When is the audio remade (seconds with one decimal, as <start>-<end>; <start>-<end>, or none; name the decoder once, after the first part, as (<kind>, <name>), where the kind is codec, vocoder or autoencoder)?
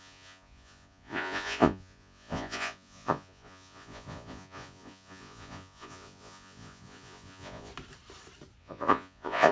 0.0-7.7 (vocoder, Vocos); 8.6-9.5